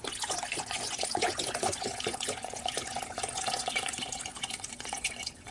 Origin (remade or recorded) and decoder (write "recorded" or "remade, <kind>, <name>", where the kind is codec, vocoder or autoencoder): remade, vocoder, Vocos